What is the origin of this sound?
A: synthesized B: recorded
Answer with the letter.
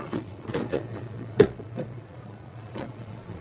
A